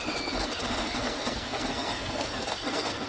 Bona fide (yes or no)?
no